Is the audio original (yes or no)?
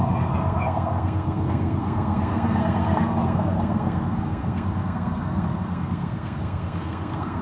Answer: no